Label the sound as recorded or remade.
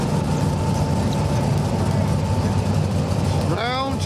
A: recorded